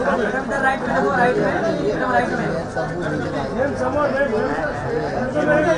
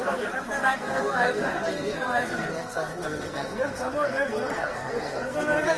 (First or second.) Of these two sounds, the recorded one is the first